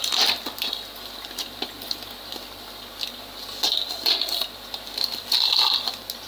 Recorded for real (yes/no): yes